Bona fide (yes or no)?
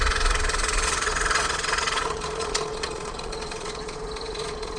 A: no